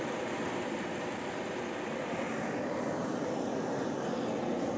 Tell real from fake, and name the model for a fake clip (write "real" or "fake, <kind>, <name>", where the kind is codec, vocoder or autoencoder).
real